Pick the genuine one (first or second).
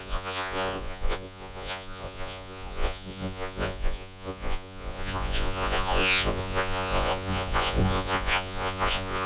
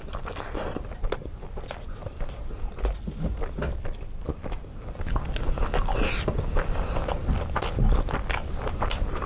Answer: second